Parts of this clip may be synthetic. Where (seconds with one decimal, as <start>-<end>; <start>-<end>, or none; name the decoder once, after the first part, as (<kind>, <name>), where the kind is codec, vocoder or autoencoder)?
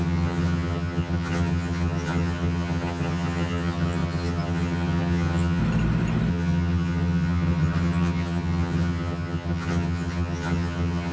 0.0-5.6 (vocoder, HiFi-GAN); 6.3-11.1